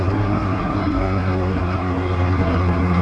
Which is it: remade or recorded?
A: remade